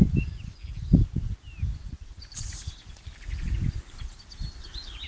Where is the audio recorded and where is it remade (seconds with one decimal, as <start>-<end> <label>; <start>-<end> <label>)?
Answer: 0.0-1.8 recorded; 1.8-5.1 remade